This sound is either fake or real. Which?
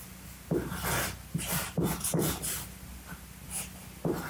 real